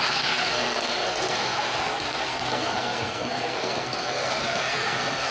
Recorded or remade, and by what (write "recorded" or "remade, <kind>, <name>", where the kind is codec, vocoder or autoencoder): remade, codec, SNAC